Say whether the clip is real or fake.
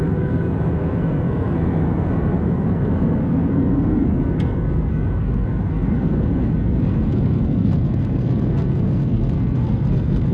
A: fake